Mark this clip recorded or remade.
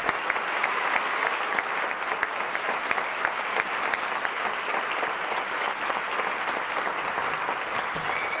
recorded